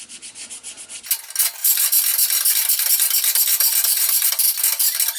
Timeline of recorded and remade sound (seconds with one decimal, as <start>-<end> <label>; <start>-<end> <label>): 0.0-3.5 recorded; 3.5-4.3 remade; 4.3-5.2 recorded